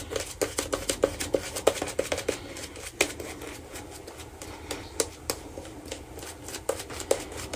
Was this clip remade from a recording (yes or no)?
no